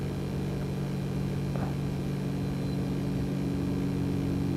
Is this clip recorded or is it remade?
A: recorded